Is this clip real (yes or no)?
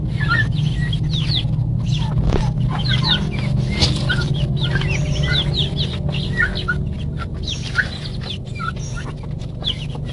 yes